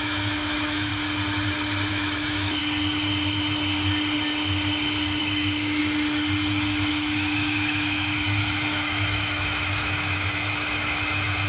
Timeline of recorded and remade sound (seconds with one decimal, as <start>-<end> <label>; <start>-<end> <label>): 0.0-0.9 remade; 0.9-1.9 recorded; 1.9-2.6 remade; 2.6-5.2 recorded; 5.2-5.8 remade; 5.8-6.9 recorded; 6.9-11.5 remade